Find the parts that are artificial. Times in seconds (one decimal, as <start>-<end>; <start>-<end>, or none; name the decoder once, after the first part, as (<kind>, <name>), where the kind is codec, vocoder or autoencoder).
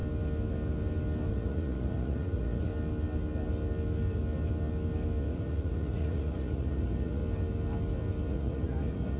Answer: 1.3-2.7 (vocoder, Vocos); 5.2-7.2; 8.3-9.2